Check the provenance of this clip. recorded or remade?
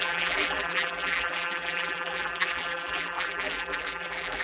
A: remade